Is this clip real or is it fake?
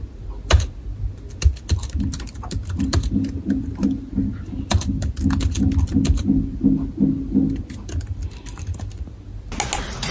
real